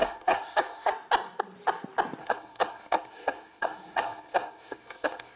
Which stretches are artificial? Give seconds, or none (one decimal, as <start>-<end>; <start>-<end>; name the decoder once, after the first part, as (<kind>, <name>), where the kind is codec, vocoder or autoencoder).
0.0-0.9 (codec, SNAC); 2.2-5.4